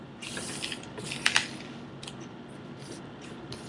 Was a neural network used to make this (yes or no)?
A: no